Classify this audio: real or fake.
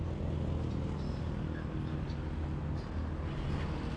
real